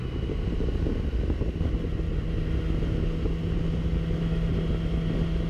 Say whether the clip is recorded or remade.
recorded